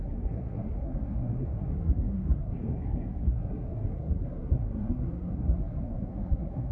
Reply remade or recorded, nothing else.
remade